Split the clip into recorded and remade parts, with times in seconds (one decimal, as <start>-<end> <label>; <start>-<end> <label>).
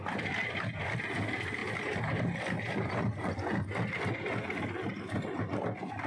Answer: 0.0-1.6 recorded; 1.6-2.9 remade; 2.9-6.1 recorded